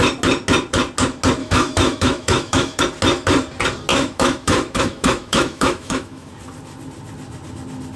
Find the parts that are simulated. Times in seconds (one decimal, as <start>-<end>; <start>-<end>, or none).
1.4-2.8; 3.9-6.3